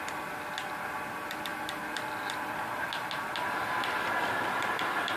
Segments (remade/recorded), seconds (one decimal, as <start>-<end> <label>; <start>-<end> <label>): 0.0-5.2 recorded